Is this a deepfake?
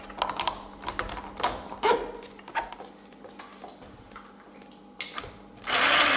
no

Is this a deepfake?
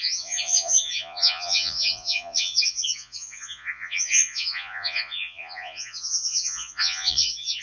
yes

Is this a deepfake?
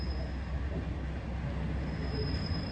no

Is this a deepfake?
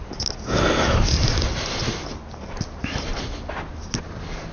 no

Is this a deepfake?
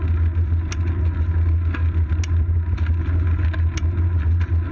no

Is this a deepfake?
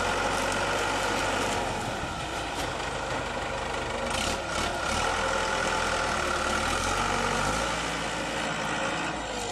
no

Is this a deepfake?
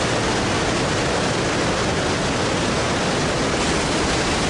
no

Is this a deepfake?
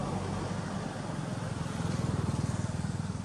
no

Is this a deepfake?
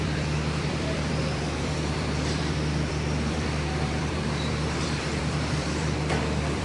yes